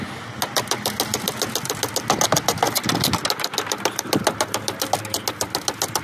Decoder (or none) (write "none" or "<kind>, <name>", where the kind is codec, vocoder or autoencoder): none